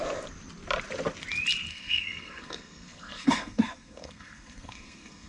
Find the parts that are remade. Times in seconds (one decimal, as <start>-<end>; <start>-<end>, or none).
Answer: 1.7-5.3